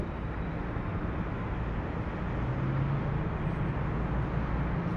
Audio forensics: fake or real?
real